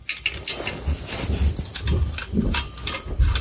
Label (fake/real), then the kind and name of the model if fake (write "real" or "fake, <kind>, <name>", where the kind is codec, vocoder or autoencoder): real